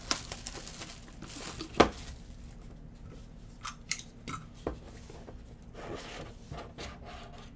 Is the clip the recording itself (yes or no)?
yes